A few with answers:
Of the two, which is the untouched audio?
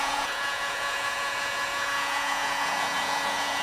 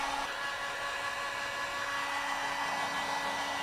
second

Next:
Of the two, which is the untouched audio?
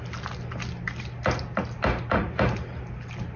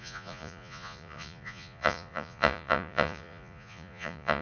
first